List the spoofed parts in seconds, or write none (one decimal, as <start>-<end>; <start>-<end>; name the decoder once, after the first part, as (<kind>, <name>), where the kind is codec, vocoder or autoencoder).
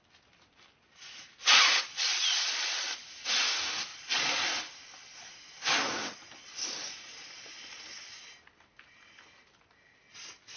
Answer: 1.6-3.0 (vocoder, Vocos); 3.9-4.5